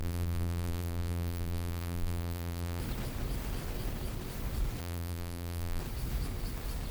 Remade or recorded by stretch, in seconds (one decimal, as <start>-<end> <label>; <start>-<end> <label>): 0.0-2.8 remade; 2.8-4.8 recorded; 4.8-5.8 remade; 5.8-6.9 recorded